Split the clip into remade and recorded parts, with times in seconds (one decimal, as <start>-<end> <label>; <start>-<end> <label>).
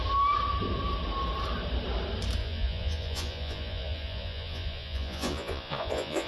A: 0.0-2.4 recorded; 2.4-6.3 remade